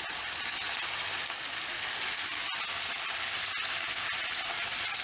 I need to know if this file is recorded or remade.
recorded